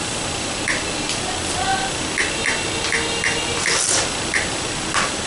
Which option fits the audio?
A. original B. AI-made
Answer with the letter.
A